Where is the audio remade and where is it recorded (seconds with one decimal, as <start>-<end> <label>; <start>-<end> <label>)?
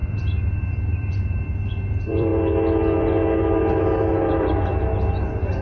0.0-2.3 remade; 2.3-4.0 recorded; 4.0-5.6 remade